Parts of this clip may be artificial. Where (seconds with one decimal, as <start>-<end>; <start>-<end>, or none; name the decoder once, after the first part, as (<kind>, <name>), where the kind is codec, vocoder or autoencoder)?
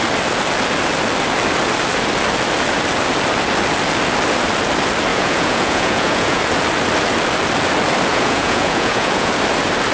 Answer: 5.1-6.4 (vocoder, Vocos); 8.1-9.3